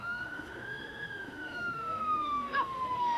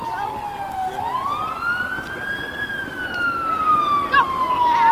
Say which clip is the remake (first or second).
first